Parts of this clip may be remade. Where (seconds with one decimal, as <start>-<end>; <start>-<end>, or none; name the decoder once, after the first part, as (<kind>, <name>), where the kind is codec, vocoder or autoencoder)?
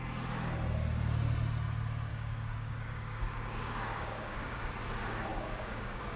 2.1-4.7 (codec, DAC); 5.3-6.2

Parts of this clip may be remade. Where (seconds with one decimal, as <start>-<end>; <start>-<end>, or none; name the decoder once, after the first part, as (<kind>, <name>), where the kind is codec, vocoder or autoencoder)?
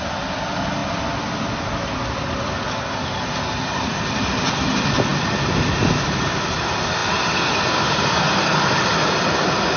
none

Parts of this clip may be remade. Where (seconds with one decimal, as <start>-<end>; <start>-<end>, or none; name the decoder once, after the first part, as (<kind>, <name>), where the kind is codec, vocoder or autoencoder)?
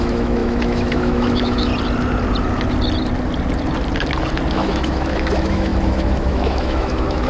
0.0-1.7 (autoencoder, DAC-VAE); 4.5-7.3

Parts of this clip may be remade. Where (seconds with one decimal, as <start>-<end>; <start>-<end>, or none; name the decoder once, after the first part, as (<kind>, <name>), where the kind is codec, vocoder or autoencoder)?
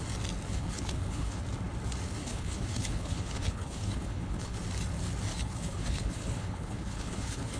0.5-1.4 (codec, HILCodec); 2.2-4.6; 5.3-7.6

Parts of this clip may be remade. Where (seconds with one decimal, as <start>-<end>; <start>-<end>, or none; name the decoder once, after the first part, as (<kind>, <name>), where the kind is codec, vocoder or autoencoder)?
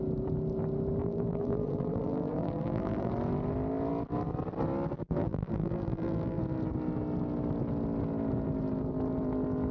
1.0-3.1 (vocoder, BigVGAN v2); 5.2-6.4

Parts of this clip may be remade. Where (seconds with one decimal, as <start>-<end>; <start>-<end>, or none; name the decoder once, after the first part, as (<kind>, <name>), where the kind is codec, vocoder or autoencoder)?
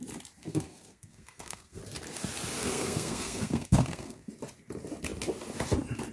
0.4-1.8 (codec, SNAC); 2.6-4.3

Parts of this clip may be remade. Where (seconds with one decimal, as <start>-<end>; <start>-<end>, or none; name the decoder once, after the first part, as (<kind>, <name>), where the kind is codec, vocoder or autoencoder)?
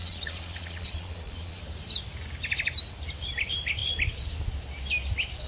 0.0-1.6 (vocoder, Vocos)